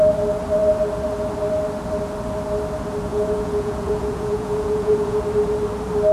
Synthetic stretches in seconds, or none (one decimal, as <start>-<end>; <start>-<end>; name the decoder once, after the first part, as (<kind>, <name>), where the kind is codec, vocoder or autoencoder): 3.1-5.2 (vocoder, Vocos)